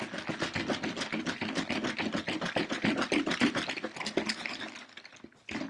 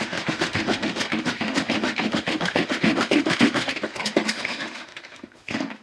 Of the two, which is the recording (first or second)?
first